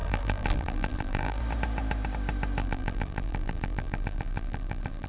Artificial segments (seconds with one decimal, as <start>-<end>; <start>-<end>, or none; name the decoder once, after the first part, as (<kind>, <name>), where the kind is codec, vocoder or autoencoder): 0.0-1.4 (vocoder, BigVGAN v2); 2.6-5.1